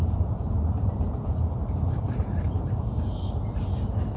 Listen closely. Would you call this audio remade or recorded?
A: remade